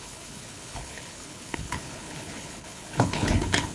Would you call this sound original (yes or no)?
no